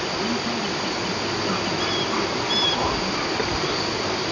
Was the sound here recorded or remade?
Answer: recorded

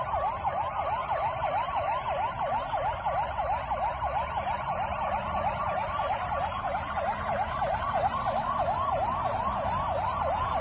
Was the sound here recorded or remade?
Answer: remade